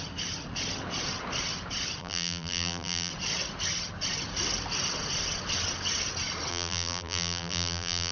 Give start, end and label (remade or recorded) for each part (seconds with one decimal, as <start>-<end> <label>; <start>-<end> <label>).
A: 0.0-2.0 recorded; 2.0-3.1 remade; 3.1-6.5 recorded; 6.5-8.1 remade